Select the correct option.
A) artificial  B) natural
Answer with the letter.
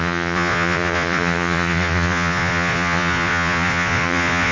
A